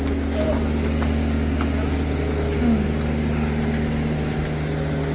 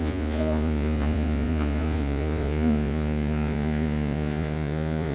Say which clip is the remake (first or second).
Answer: second